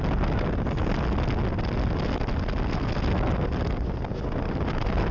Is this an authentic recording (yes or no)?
yes